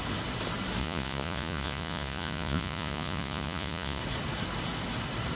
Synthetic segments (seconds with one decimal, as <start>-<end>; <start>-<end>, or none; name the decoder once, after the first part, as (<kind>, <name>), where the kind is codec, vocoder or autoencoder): 0.8-4.0 (vocoder, Vocos)

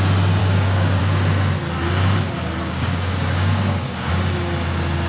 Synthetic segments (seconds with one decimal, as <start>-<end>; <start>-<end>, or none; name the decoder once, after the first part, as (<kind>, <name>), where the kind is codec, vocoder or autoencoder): 0.4-1.0 (codec, DAC); 2.6-4.1

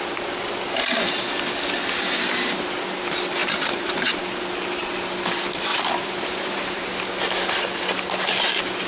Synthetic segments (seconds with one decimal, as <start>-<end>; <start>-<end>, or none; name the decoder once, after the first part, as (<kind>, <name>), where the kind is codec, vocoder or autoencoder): 3.4-4.2 (vocoder, BigVGAN v2); 5.7-7.0